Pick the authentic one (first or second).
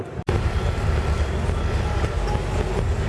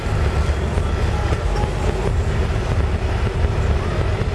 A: first